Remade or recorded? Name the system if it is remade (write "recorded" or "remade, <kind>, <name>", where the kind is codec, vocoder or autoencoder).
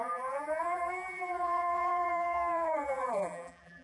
remade, vocoder, BigVGAN v2